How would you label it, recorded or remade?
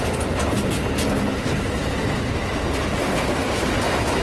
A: recorded